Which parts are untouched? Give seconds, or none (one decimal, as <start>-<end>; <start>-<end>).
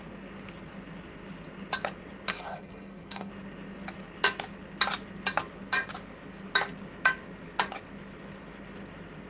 0.0-2.3; 3.3-9.3